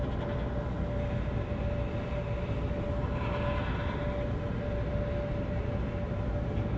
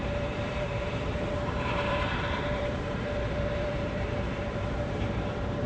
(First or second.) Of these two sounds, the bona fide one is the first